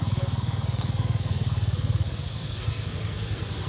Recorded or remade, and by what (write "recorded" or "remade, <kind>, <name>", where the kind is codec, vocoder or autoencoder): remade, codec, SNAC